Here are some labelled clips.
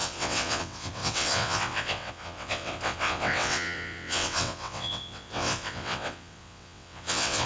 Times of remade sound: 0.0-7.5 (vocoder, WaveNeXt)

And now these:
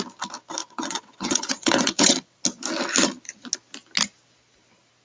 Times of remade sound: 0.6-2.4 (vocoder, WaveNeXt)

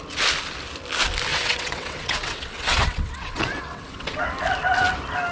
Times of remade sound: 1.3-4.2 (vocoder, WaveNeXt)

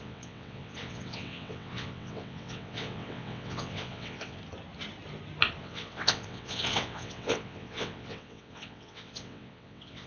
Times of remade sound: 0.0-4.4 (vocoder, WaveNeXt); 5.6-10.1

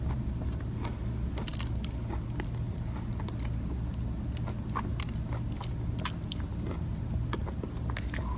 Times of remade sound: none

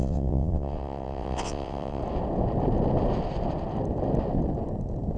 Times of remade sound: 0.0-2.0 (vocoder, WaveNeXt)